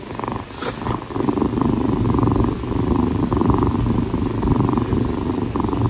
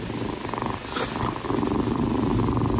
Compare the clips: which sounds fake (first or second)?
first